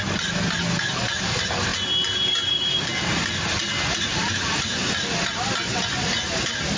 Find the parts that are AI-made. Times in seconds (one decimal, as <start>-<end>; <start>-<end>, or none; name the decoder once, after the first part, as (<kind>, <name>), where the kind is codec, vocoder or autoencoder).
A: none